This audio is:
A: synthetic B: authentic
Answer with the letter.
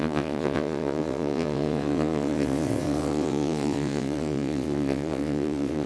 A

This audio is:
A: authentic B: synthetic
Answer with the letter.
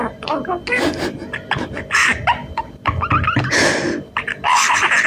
A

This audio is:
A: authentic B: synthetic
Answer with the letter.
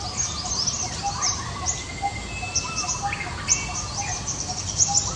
A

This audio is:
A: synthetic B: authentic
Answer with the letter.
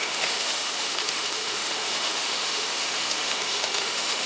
A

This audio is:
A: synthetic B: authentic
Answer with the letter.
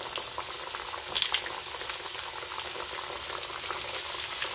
B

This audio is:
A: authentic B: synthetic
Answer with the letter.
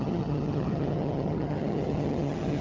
B